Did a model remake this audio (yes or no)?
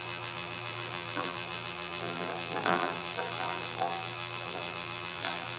yes